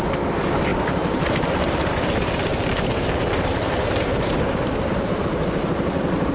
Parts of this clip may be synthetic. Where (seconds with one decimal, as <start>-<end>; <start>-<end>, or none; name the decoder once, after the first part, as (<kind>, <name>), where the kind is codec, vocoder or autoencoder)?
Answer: 0.7-1.9 (vocoder, BigVGAN v2); 2.5-6.3